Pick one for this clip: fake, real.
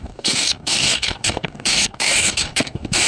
fake